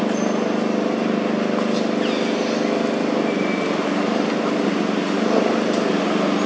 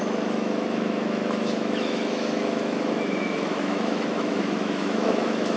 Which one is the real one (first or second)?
first